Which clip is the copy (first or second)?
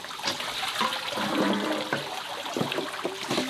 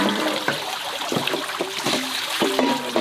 second